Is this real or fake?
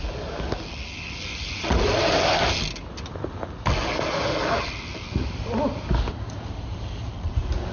real